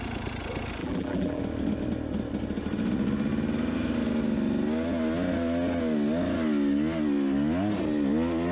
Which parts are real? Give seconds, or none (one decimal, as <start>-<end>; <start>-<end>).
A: 0.0-0.8; 1.4-8.5